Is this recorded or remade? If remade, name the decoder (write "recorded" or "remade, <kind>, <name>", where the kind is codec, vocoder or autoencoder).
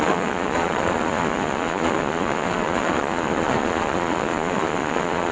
remade, vocoder, Vocos